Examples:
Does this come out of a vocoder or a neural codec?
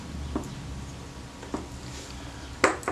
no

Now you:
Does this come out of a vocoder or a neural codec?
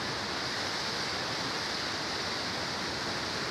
no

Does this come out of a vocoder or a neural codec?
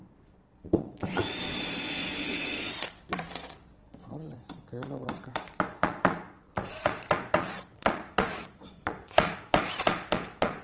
yes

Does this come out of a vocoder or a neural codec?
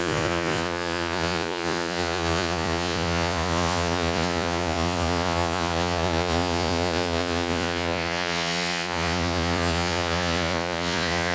yes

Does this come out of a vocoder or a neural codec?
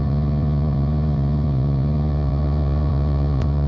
yes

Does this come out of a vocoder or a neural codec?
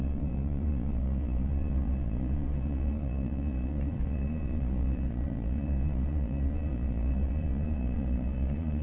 yes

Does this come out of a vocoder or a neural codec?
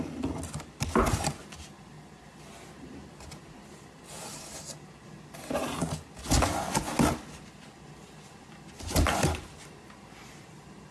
no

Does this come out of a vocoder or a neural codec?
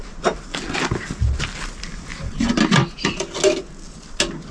no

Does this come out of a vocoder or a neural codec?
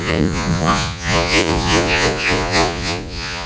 yes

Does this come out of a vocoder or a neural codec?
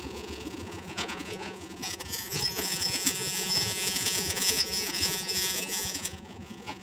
yes